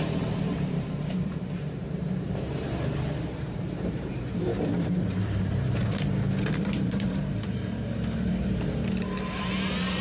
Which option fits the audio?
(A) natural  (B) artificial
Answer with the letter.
B